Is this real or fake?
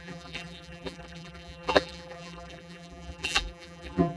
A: fake